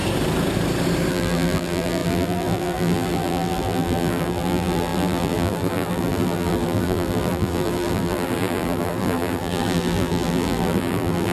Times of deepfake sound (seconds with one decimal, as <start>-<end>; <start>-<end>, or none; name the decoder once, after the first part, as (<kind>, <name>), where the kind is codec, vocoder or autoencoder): 1.1-11.3 (vocoder, BigVGAN v2)